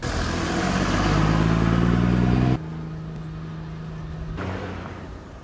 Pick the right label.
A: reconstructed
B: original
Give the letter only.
B